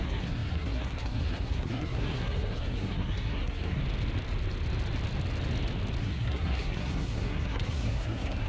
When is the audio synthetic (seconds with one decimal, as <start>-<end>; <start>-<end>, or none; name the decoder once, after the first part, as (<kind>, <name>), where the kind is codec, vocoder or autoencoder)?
0.0-3.8 (codec, SNAC); 6.0-8.5